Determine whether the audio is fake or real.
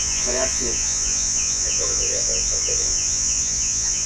fake